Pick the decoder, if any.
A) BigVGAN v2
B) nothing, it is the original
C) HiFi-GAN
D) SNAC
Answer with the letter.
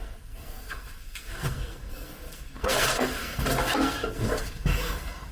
D